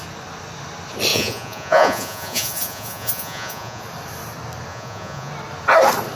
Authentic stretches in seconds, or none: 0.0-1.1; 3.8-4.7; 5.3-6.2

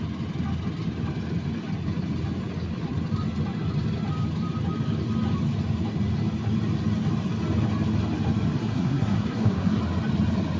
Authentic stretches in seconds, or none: 0.0-8.6; 9.8-10.6

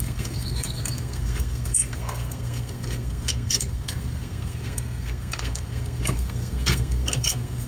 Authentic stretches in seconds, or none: none

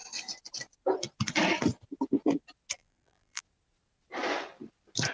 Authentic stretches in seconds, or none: 0.0-2.8; 3.4-5.1

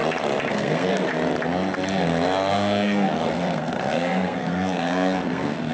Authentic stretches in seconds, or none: 0.0-0.5; 1.1-2.5

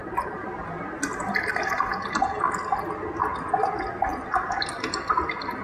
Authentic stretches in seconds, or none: 0.0-5.6

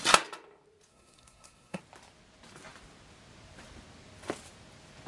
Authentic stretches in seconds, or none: 0.0-0.9; 1.8-5.1

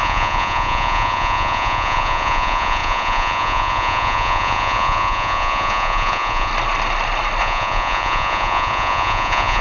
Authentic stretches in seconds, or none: 6.5-7.4